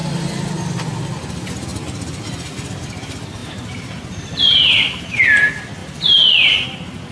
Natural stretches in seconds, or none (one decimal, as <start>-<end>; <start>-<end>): 0.5-1.7; 2.7-3.4; 4.4-5.8